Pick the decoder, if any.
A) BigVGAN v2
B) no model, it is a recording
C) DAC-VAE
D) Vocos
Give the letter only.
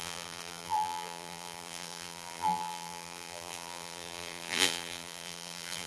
A